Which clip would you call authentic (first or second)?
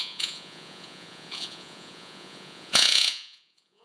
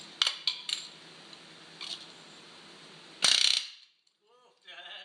second